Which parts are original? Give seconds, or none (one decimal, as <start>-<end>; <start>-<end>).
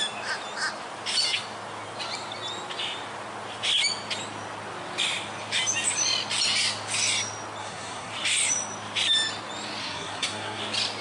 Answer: 0.0-7.6; 8.1-9.8; 10.6-11.0